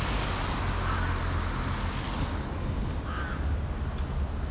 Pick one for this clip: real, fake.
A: real